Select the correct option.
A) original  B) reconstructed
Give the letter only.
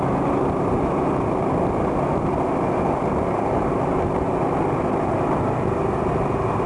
A